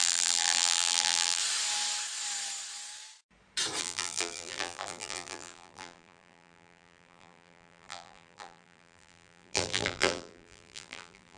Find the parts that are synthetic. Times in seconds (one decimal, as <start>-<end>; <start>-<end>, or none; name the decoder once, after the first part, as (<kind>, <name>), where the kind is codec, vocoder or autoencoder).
0.0-1.4 (vocoder, BigVGAN v2); 3.8-11.4

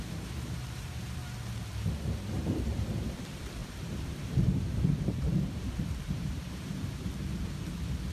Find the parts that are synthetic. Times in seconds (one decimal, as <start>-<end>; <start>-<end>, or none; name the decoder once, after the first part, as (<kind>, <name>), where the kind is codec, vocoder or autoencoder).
0.0-1.2 (vocoder, BigVGAN v2); 2.3-8.1

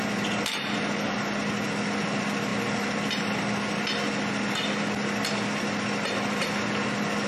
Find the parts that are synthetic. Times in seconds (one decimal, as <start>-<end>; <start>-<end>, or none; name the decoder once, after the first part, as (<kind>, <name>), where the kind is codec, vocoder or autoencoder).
none

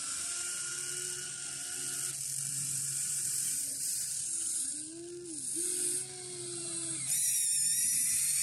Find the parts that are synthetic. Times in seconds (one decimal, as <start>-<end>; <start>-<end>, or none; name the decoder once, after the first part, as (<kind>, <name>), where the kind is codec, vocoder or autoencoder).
0.0-0.7 (vocoder, BigVGAN v2); 2.5-4.7; 6.4-8.4

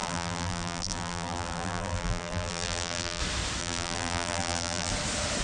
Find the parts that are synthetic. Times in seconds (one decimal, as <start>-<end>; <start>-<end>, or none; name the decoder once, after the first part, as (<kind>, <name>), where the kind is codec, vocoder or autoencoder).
0.0-3.2 (vocoder, BigVGAN v2); 3.6-4.9